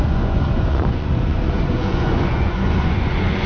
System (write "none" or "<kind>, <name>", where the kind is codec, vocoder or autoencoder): vocoder, Vocos